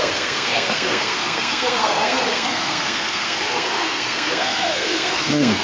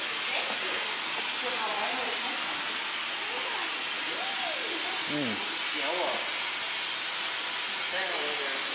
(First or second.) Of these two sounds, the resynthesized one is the first